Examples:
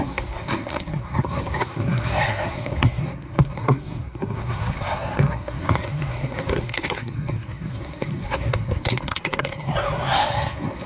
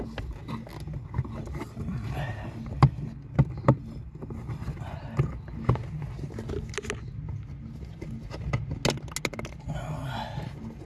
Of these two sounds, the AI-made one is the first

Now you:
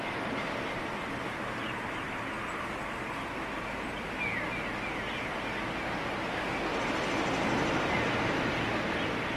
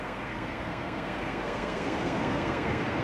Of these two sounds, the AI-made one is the second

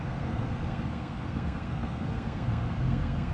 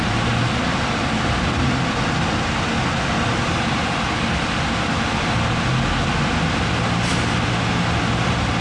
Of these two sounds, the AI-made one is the first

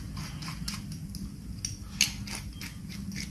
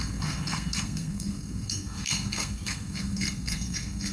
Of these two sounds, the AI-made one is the second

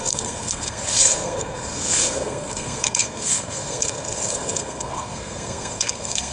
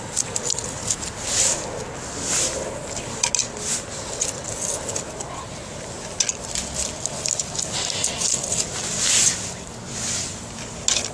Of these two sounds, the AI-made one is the first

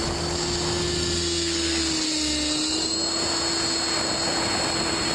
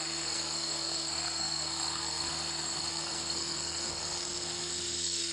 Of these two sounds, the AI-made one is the second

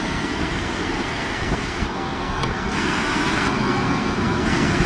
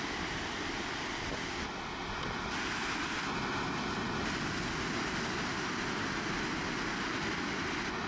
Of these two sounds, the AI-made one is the first